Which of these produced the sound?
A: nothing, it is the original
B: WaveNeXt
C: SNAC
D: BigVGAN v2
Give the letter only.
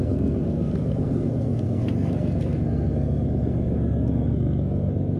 C